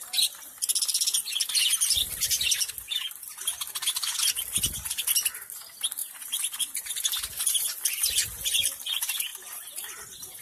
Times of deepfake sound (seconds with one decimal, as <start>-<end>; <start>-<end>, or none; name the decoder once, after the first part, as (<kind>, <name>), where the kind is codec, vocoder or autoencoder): 6.0-6.9 (vocoder, BigVGAN v2); 9.3-10.4